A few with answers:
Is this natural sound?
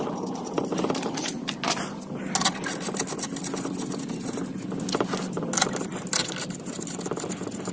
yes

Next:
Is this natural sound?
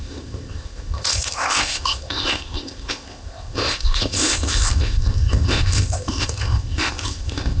no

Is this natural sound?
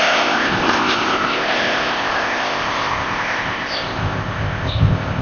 no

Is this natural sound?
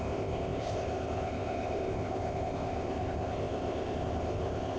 no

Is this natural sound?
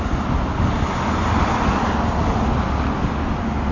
yes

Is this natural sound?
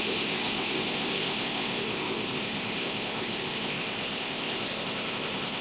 no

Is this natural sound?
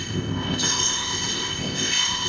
no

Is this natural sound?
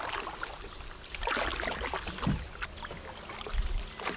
yes